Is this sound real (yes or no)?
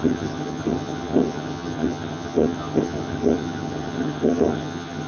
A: no